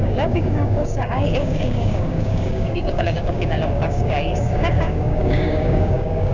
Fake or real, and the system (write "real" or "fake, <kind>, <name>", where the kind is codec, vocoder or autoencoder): fake, codec, DAC